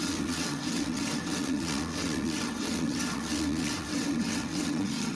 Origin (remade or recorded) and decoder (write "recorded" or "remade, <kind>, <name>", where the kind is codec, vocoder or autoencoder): remade, vocoder, WaveNeXt